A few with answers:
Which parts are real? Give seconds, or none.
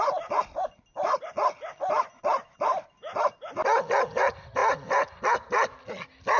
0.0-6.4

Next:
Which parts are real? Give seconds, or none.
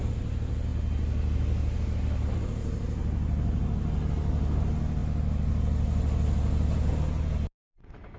0.0-8.2